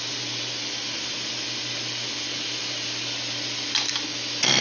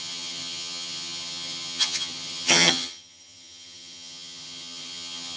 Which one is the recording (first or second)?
first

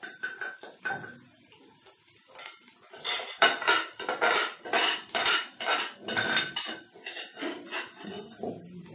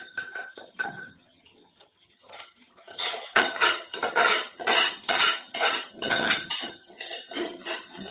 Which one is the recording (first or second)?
first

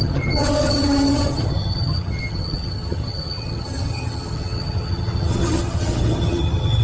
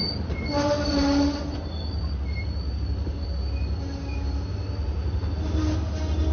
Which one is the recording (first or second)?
second